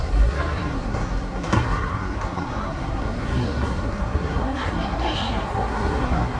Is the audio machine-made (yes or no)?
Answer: yes